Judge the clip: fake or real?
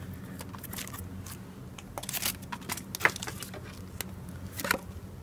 real